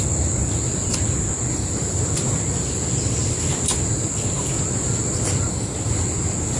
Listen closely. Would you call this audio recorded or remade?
recorded